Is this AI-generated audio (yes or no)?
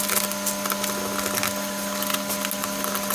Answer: no